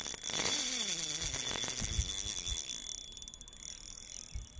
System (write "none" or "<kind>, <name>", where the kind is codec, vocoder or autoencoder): none